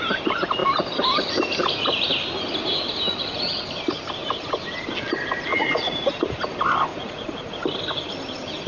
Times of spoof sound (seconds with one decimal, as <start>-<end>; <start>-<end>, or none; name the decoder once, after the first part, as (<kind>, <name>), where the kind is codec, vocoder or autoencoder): 5.5-6.1 (vocoder, Vocos); 6.9-7.5